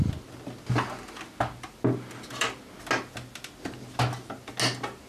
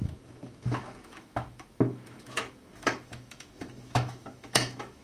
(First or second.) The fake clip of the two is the second